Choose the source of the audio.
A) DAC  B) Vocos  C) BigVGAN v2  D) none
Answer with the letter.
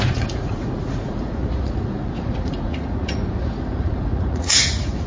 B